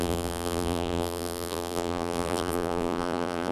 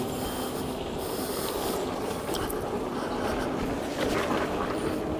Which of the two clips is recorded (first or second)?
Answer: second